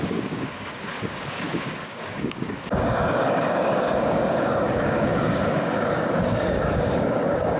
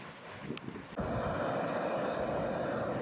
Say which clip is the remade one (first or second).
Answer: first